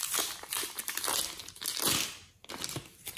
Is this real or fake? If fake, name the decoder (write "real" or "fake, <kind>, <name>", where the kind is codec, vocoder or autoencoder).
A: real